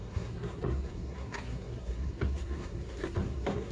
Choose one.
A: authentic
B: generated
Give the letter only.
B